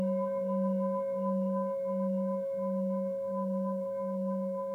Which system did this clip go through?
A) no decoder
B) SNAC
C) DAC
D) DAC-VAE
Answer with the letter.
D